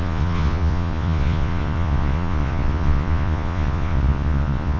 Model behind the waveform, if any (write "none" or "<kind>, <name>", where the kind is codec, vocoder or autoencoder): vocoder, Vocos